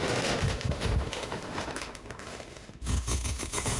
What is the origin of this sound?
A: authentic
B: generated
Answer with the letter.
B